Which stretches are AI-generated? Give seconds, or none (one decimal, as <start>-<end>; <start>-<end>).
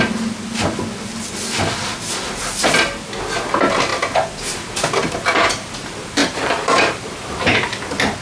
6.2-7.2